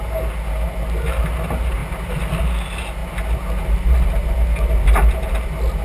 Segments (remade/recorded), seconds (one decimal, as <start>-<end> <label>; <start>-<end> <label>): 0.0-1.8 recorded; 1.8-2.4 remade; 2.4-5.8 recorded